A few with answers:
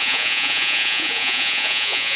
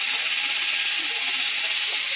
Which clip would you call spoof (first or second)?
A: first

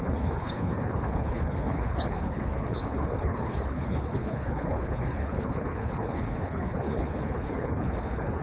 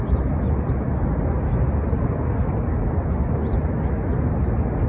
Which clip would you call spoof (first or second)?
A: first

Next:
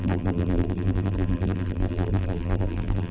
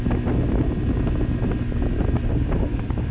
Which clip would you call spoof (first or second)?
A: first